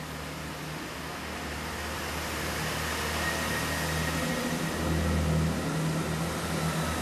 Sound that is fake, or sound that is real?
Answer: real